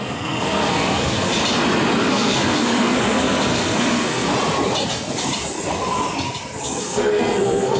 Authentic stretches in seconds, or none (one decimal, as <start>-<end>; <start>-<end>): 1.3-2.1; 4.3-6.6